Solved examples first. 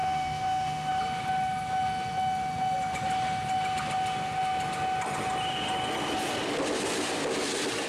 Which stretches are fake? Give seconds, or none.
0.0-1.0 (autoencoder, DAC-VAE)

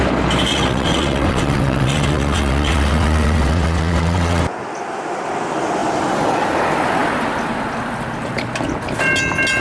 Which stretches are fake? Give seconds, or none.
0.5-4.4 (vocoder, WaveNeXt)

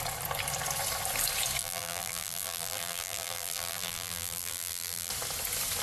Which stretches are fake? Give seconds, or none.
1.6-5.1 (vocoder, BigVGAN v2)

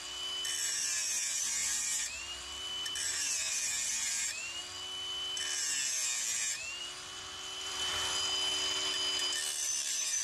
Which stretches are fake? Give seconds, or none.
0.0-4.6 (vocoder, BigVGAN v2); 6.8-7.9; 9.1-10.2

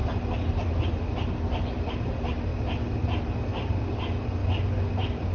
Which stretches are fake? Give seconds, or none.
none